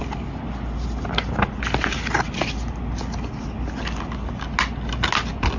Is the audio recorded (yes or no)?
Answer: yes